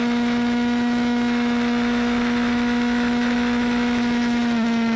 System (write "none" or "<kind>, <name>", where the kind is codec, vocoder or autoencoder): autoencoder, DAC-VAE